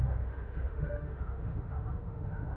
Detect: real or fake fake